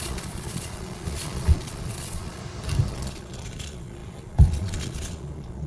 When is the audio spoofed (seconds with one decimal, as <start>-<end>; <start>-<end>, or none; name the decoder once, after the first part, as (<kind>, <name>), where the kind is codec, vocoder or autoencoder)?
0.0-2.4 (vocoder, Vocos); 2.9-5.7